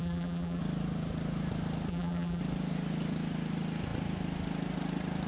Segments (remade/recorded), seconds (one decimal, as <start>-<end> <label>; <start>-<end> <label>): 0.0-0.6 remade; 0.6-1.9 recorded; 1.9-2.4 remade; 2.4-5.3 recorded

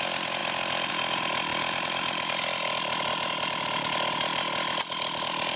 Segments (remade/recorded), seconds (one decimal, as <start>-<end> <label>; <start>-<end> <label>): 0.0-5.6 recorded

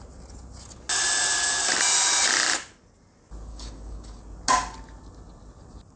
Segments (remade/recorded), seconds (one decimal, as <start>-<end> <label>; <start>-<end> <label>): 0.0-3.5 recorded; 3.5-4.2 remade; 4.2-6.0 recorded